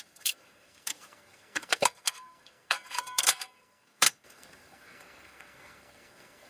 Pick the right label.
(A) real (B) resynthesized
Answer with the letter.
B